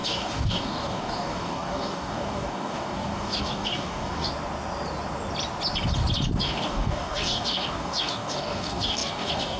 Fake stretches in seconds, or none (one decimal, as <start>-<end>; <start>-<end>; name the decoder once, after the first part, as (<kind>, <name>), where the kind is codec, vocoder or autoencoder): 0.0-4.3 (codec, DAC); 6.4-9.6